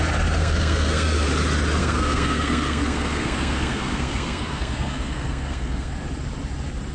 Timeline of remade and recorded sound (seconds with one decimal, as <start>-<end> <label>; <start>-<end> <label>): 0.0-0.4 recorded; 0.4-1.3 remade; 1.3-1.8 recorded; 1.8-5.9 remade; 5.9-6.9 recorded